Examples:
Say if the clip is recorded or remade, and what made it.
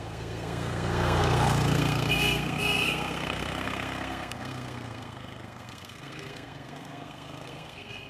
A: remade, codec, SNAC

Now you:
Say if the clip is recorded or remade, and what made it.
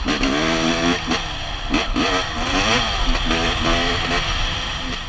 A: recorded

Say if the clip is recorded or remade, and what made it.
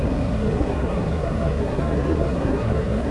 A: remade, codec, SNAC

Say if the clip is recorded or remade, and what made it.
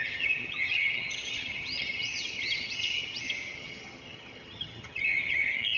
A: remade, vocoder, HiFi-GAN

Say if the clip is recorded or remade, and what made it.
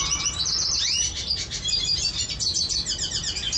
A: recorded